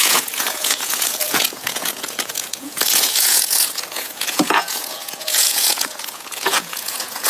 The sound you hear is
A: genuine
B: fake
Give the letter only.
B